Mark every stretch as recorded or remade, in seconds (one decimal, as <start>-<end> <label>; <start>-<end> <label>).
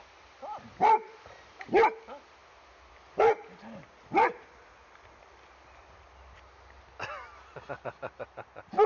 0.0-8.9 recorded